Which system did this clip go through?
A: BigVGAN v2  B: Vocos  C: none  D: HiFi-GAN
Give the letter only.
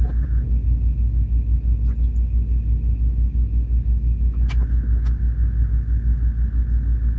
C